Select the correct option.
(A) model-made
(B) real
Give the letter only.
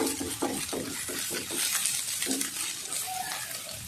B